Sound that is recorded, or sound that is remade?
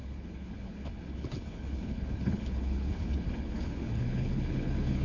remade